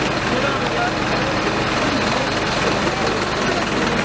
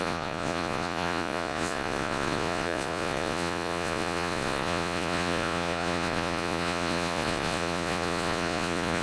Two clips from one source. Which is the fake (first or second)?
second